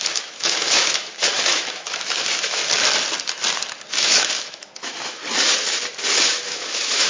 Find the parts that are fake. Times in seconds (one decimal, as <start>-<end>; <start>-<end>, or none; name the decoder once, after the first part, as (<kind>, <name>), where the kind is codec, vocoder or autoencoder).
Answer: 0.0-2.6 (autoencoder, DAC-VAE); 3.9-5.2; 6.3-7.1